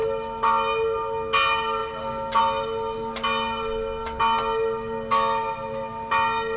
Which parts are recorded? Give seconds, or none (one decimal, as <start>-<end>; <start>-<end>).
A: 0.0-6.6

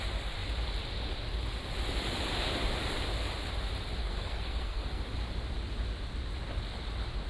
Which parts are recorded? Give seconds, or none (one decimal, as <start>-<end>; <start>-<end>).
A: 0.0-4.0; 5.0-7.3

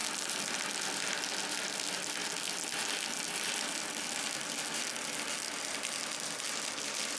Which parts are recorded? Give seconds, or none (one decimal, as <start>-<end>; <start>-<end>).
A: 0.0-7.2

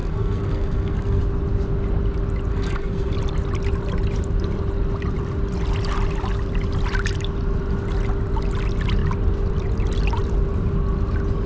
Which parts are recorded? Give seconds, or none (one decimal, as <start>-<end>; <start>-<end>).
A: 1.2-2.5; 3.1-11.5

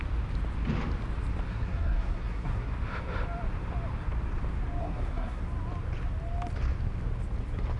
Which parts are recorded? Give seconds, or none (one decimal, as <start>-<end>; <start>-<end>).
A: 0.0-1.5; 2.7-4.8; 5.4-7.8

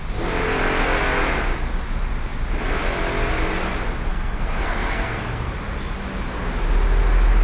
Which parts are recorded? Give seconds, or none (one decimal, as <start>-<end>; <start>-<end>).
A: 0.0-4.1; 5.5-7.4